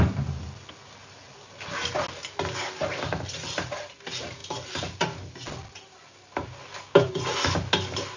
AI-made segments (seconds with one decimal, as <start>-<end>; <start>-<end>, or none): none